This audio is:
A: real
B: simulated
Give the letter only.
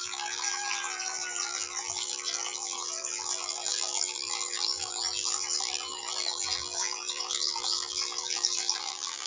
B